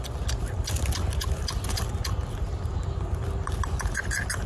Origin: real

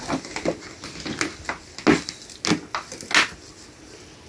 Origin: real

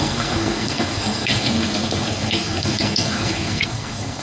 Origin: fake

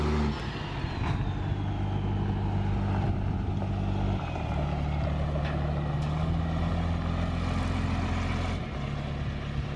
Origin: real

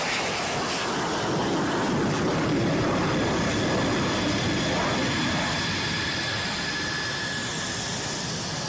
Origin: real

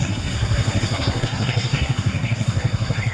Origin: fake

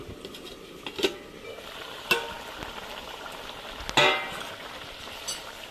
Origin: real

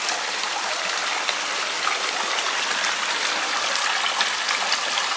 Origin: real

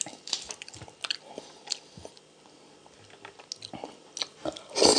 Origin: real